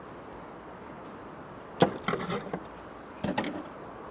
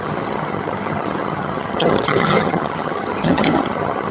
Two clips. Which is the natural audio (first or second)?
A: first